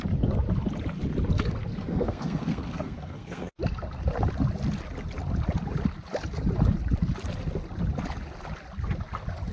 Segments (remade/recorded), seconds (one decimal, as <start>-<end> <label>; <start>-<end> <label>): 0.0-1.7 recorded; 1.7-3.6 remade; 3.6-9.5 recorded